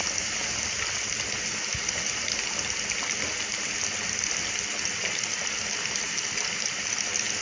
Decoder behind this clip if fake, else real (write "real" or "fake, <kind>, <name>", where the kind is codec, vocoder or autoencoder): real